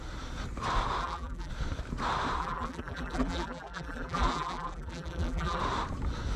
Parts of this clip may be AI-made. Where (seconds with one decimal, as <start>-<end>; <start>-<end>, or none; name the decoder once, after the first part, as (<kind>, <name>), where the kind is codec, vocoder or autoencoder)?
1.0-1.5 (vocoder, BigVGAN v2); 2.4-5.6